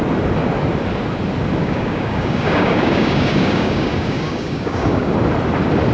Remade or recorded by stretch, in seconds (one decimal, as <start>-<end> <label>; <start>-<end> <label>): 0.0-1.6 recorded; 1.6-5.1 remade; 5.1-5.9 recorded